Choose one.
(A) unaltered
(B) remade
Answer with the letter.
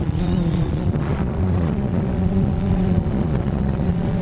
B